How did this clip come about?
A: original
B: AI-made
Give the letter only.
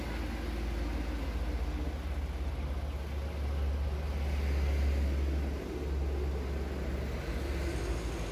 A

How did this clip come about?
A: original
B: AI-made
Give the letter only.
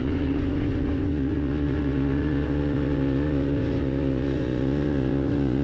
B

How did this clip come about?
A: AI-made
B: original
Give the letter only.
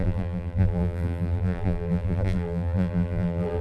A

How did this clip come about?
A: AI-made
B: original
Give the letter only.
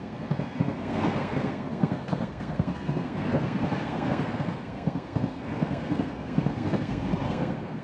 A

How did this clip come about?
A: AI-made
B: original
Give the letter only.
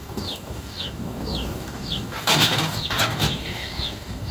A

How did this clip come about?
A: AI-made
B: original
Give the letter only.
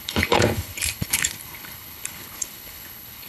A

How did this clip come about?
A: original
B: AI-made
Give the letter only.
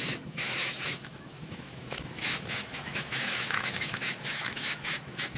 B